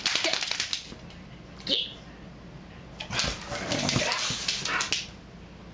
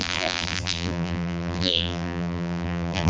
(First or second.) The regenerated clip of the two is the second